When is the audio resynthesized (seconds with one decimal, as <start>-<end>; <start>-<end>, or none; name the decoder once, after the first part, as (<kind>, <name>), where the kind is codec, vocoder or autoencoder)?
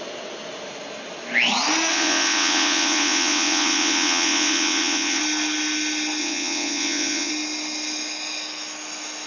1.9-5.2 (vocoder, WaveNeXt); 6.2-7.3